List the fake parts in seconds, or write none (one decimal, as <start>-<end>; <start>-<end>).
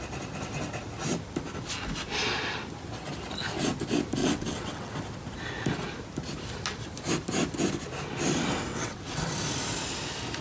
4.2-4.9; 8.7-9.3